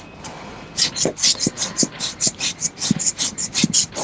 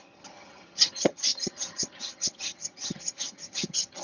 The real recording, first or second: first